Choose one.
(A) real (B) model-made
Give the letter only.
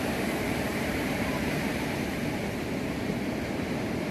B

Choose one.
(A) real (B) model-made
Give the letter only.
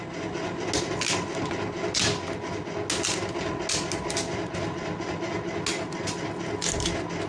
A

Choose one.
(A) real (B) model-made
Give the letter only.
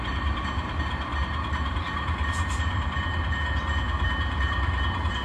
B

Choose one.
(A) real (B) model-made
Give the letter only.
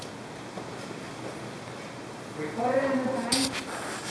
A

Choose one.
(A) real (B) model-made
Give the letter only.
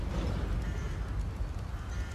A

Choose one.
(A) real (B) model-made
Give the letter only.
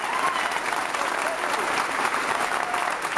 B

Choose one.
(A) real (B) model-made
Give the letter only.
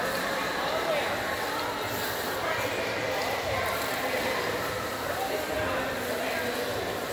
A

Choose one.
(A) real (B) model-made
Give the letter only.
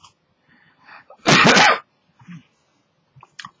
A